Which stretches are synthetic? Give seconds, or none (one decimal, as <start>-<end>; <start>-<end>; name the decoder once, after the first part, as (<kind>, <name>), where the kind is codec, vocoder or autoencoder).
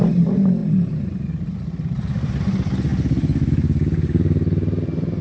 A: 0.6-1.4 (vocoder, BigVGAN v2)